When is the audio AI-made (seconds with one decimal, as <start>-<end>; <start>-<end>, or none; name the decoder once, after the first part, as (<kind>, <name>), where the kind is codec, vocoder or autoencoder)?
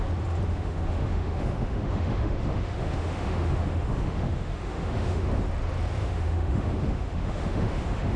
0.5-5.3 (autoencoder, DAC-VAE); 6.0-8.2